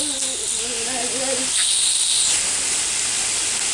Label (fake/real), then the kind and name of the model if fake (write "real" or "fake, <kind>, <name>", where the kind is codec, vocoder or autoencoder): real